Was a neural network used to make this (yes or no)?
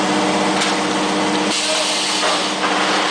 no